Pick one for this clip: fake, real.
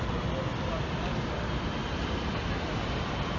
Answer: real